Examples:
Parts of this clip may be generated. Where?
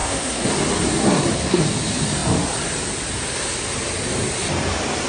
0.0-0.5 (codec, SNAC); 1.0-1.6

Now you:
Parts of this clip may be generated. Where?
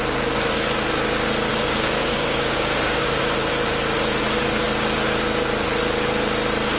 1.5-3.2 (codec, DAC)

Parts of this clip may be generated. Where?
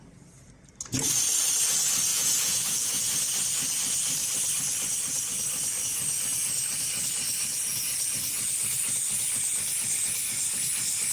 2.1-3.1 (vocoder, Vocos)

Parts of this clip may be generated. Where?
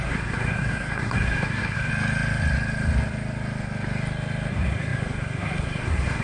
0.0-1.9 (codec, SNAC); 4.5-6.2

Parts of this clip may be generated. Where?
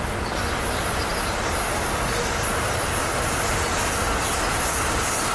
none